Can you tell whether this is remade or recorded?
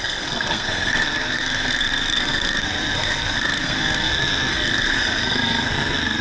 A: remade